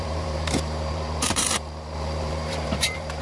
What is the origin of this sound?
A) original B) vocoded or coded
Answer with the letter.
B